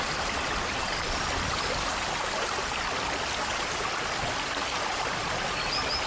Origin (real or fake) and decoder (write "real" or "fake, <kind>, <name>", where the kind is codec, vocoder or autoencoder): real